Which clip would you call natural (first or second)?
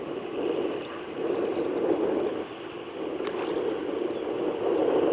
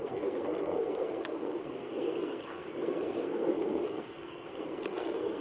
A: first